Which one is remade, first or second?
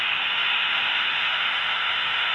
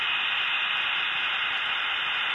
first